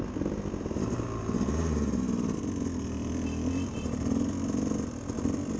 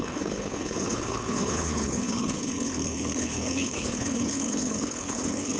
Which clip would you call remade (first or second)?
second